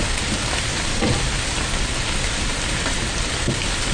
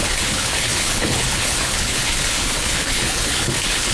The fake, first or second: second